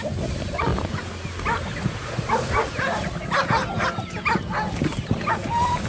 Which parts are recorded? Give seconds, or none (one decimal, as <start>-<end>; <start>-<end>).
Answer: 0.0-5.9